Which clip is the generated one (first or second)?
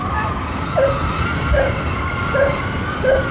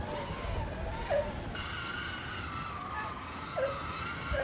first